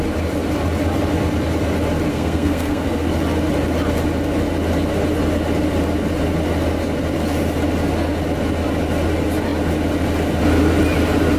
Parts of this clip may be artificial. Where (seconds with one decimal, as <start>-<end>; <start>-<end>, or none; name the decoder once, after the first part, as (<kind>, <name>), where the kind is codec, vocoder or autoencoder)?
2.1-3.1 (codec, SNAC)